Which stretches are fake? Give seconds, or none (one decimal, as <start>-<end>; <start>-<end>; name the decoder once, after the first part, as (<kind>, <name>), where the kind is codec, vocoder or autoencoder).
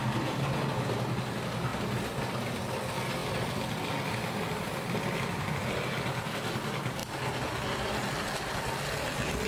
none